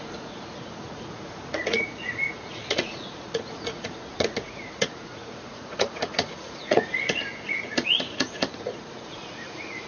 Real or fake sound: fake